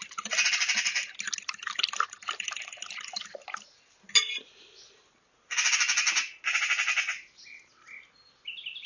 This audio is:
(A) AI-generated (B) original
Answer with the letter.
B